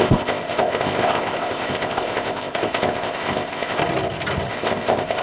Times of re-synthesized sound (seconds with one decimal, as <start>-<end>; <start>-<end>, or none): 0.0-3.8; 4.5-5.2